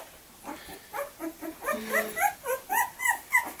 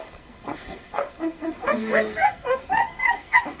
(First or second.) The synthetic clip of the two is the second